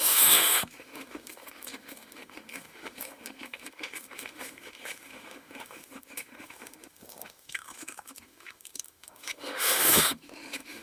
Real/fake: fake